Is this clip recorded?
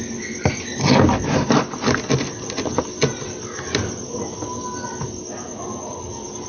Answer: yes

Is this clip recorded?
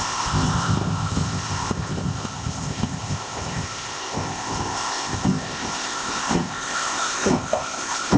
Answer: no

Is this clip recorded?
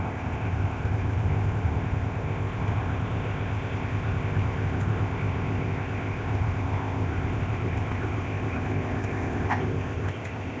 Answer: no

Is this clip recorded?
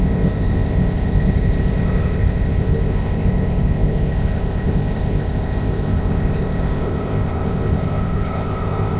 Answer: no